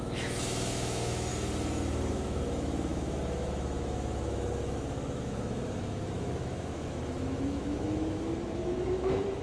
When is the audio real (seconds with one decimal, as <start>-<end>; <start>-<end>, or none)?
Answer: 1.3-2.1